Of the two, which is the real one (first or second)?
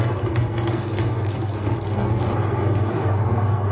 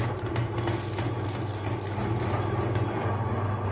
second